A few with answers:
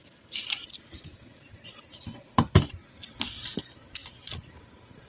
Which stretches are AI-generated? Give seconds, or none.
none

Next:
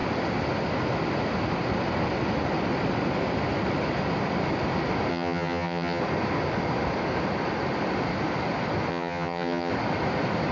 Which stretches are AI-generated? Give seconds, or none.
5.1-6.0 (vocoder, HiFi-GAN); 8.9-9.7

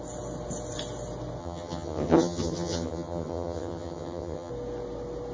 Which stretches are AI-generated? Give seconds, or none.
1.4-4.5 (vocoder, HiFi-GAN)